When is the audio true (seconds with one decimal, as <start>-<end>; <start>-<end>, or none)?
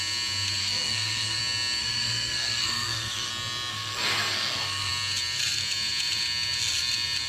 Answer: 0.0-0.6; 1.4-1.8; 3.3-3.7; 4.9-7.3